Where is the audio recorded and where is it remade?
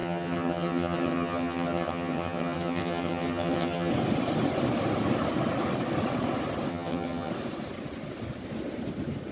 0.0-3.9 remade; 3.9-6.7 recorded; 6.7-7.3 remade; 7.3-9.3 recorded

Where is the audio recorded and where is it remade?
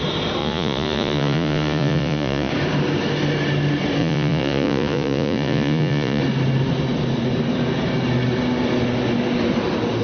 0.0-0.4 recorded; 0.4-2.5 remade; 2.5-4.0 recorded; 4.0-6.2 remade; 6.2-10.0 recorded